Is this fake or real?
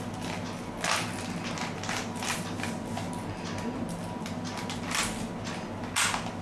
real